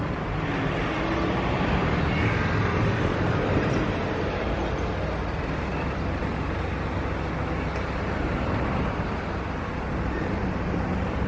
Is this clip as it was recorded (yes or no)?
yes